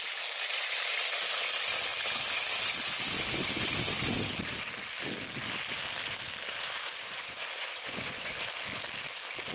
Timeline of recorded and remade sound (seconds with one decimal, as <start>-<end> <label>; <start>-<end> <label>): 0.0-6.9 recorded; 6.9-8.3 remade; 8.3-9.5 recorded